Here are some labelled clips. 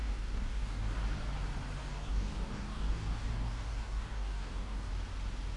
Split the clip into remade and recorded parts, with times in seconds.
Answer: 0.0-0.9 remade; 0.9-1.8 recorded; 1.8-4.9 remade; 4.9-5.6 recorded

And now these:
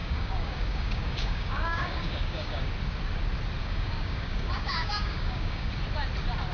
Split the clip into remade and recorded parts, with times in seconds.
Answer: 0.0-2.6 remade; 2.6-3.6 recorded; 3.6-5.7 remade; 5.7-6.5 recorded

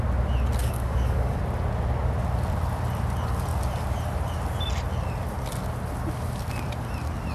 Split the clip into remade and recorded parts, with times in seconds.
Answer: 0.0-0.6 recorded; 0.6-1.4 remade; 1.4-7.3 recorded

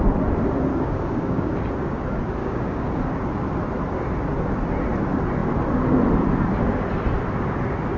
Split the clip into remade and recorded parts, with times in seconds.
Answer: 0.0-0.7 recorded; 0.7-1.5 remade; 1.5-2.4 recorded; 2.4-3.0 remade; 3.0-8.0 recorded

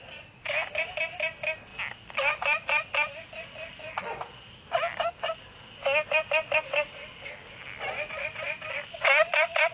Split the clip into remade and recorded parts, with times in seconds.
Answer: 0.0-9.7 recorded

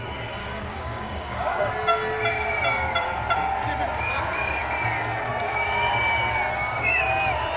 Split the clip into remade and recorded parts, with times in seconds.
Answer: 0.0-0.4 recorded; 0.4-1.7 remade; 1.7-6.5 recorded; 6.5-7.1 remade; 7.1-7.6 recorded